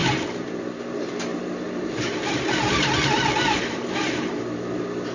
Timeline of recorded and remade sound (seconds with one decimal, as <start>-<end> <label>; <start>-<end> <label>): 0.0-0.5 remade; 0.5-1.3 recorded; 1.3-4.4 remade; 4.4-5.1 recorded